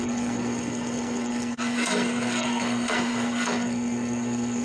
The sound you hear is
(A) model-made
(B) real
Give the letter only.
A